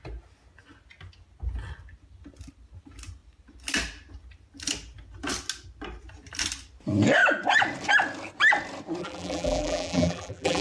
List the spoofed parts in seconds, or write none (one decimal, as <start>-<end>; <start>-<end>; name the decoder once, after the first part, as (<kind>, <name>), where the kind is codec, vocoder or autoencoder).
9.0-10.6 (vocoder, BigVGAN v2)